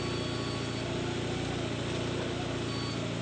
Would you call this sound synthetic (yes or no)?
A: no